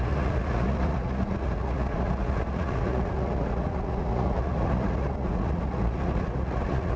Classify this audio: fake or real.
fake